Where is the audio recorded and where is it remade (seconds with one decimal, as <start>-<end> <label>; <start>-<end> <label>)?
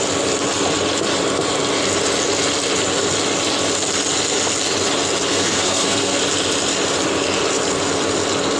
0.0-5.3 recorded; 5.3-6.2 remade; 6.2-8.6 recorded